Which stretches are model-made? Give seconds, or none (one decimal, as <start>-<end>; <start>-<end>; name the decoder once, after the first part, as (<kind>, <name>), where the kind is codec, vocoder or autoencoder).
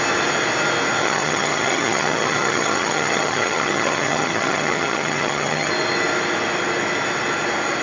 1.0-5.7 (vocoder, HiFi-GAN)